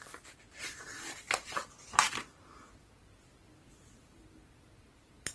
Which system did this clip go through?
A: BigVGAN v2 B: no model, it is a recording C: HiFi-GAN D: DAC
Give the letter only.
A